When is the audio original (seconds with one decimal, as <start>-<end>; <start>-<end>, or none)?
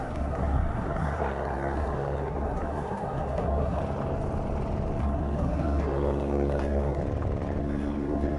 3.8-5.0; 7.0-7.6